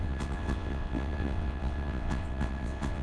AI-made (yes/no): yes